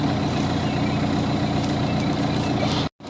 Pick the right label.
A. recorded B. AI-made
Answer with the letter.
A